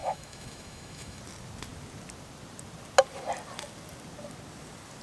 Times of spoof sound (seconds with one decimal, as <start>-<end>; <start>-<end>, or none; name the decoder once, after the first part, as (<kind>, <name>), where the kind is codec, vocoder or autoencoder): 0.0-1.2 (autoencoder, DAC-VAE)